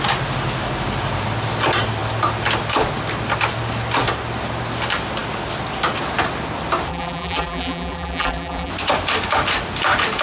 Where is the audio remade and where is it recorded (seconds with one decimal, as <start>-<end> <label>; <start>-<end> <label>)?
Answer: 0.0-6.9 recorded; 6.9-8.7 remade; 8.7-10.2 recorded